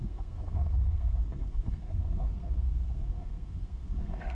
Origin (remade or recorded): remade